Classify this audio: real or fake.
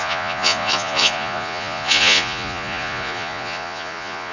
fake